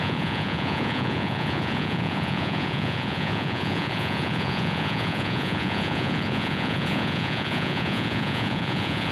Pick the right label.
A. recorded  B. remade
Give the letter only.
B